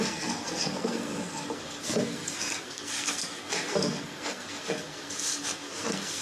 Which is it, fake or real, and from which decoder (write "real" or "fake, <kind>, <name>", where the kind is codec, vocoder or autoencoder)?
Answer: fake, codec, SNAC